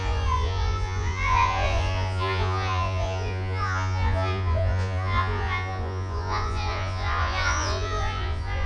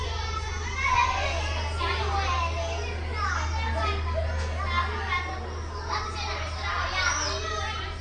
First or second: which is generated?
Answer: first